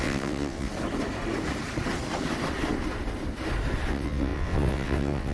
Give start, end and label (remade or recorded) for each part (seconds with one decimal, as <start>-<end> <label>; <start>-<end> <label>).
0.0-0.7 remade; 0.7-3.9 recorded; 3.9-5.3 remade